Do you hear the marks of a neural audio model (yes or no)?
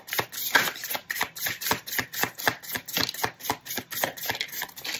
no